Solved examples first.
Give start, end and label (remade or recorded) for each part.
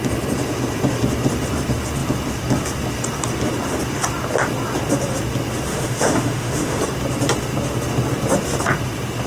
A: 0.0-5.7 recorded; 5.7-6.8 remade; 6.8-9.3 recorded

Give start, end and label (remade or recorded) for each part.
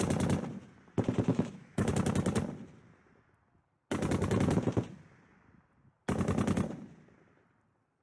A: 0.0-1.3 recorded; 1.3-1.9 remade; 1.9-8.0 recorded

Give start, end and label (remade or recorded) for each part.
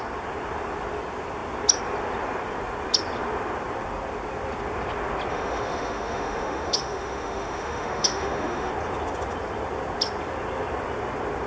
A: 0.0-5.3 recorded; 5.3-8.7 remade; 8.7-11.5 recorded